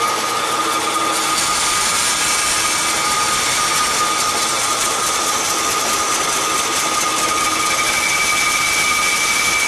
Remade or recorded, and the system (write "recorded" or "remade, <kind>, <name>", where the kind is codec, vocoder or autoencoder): recorded